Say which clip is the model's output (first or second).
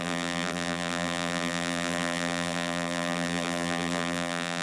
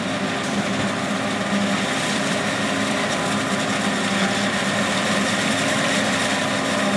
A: first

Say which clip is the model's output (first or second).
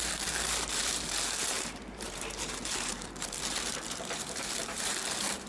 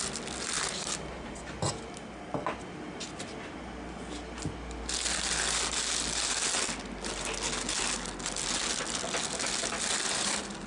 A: first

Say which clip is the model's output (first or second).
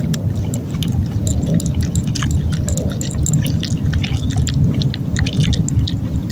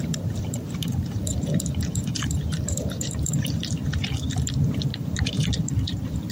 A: second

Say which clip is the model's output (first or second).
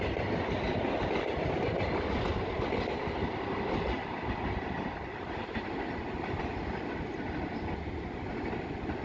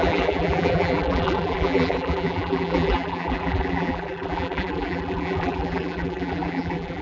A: second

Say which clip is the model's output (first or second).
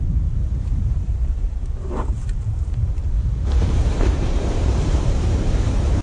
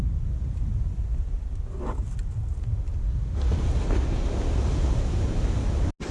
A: first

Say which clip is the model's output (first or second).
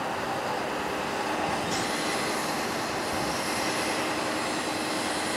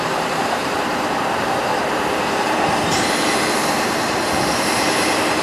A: second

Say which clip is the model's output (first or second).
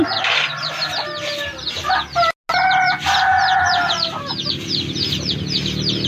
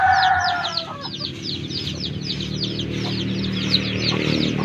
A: second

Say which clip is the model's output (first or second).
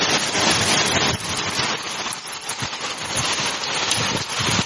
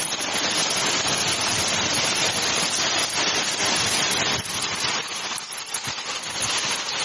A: second